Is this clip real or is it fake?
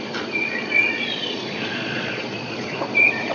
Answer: fake